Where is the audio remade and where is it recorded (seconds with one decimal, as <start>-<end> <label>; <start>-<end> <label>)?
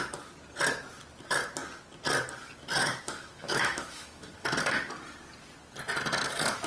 0.0-2.8 recorded; 2.8-4.3 remade; 4.3-6.7 recorded